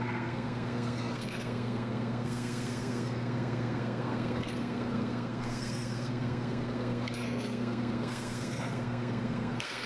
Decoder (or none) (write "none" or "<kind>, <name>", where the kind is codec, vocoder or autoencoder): codec, SNAC